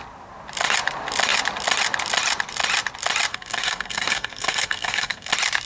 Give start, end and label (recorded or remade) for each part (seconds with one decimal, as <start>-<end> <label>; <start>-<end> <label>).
0.0-3.3 recorded; 3.3-5.3 remade; 5.3-5.7 recorded